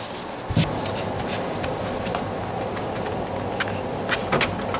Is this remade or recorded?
recorded